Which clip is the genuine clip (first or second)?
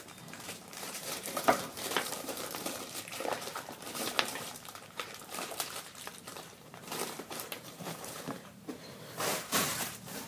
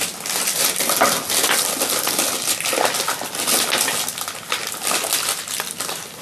second